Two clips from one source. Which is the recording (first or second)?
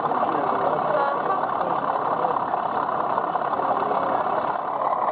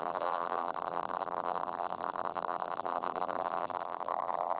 first